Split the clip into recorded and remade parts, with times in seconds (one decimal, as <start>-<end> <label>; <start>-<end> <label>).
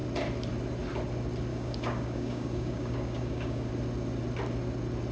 0.0-1.5 recorded; 1.5-3.7 remade; 3.7-5.1 recorded